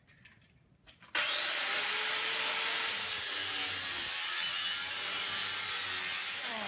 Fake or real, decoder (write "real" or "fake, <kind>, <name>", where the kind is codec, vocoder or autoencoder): fake, vocoder, BigVGAN v2